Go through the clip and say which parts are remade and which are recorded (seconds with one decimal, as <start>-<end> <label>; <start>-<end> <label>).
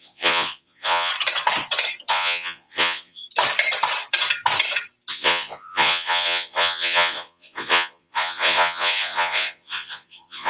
0.0-1.1 remade; 1.1-2.1 recorded; 2.1-3.2 remade; 3.2-5.1 recorded; 5.1-10.5 remade